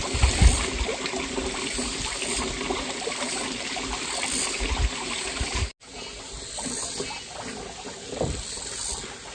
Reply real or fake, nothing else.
real